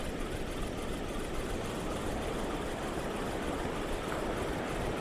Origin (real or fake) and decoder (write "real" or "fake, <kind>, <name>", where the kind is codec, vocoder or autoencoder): real